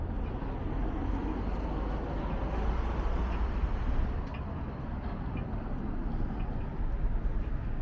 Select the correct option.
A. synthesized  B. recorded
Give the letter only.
B